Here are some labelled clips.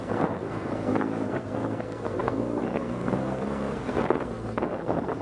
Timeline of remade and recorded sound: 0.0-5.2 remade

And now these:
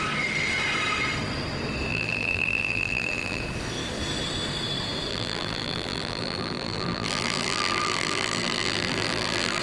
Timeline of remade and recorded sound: 0.0-1.9 recorded; 1.9-3.4 remade; 3.4-5.1 recorded; 5.1-9.6 remade